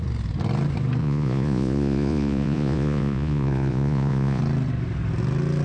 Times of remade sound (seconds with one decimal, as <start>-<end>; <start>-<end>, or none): 1.0-4.4